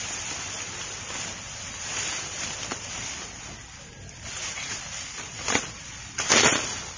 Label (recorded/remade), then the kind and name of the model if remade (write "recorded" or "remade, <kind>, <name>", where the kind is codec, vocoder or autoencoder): recorded